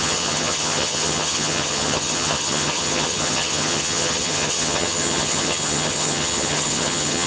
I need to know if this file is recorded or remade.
remade